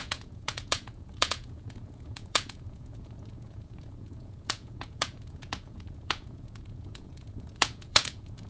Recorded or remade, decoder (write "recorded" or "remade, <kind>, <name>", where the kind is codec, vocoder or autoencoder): remade, vocoder, Vocos